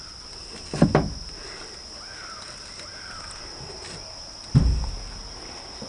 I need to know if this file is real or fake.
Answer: real